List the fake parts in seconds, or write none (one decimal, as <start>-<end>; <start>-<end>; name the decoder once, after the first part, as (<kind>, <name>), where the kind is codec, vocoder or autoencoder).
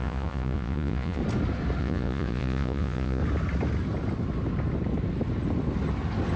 0.0-1.2 (vocoder, Vocos); 1.8-3.2